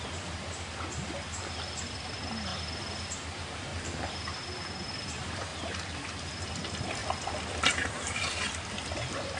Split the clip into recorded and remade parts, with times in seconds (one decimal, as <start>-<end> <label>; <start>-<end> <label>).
0.0-3.7 remade; 3.7-4.9 recorded; 4.9-5.5 remade; 5.5-6.4 recorded; 6.4-9.4 remade

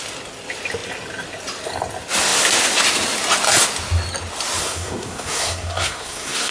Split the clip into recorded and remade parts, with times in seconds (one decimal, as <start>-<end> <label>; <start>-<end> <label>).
0.0-4.6 recorded; 4.6-6.5 remade

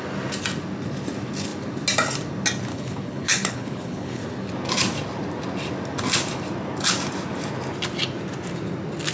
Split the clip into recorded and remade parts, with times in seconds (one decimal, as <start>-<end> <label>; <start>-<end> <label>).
0.0-2.7 recorded; 2.7-4.2 remade; 4.2-9.1 recorded